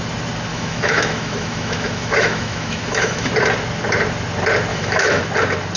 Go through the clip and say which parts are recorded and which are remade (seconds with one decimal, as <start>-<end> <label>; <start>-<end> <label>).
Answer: 0.0-0.5 recorded; 0.5-3.3 remade; 3.3-4.7 recorded; 4.7-5.2 remade; 5.2-5.8 recorded